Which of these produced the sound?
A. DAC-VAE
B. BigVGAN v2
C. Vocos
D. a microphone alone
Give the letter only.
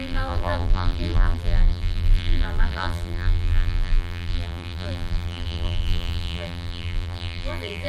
B